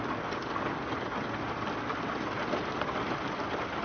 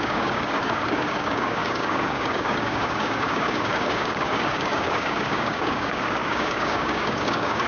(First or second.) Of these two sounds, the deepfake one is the second